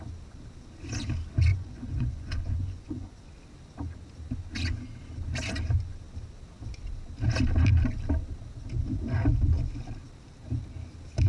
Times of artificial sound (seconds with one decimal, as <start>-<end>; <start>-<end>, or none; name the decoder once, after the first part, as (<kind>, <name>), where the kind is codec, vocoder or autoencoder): 1.5-3.2 (vocoder, Vocos)